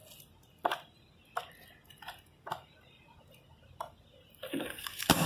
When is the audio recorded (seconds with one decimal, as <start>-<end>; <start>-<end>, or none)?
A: 0.0-4.5